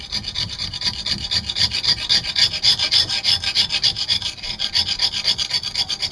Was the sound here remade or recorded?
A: recorded